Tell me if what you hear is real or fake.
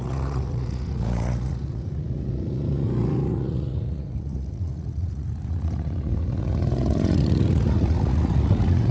fake